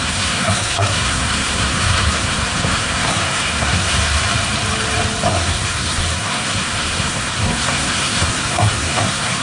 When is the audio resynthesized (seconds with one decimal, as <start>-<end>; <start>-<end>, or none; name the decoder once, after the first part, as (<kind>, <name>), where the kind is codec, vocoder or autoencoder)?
0.0-4.2 (codec, SNAC); 5.3-9.4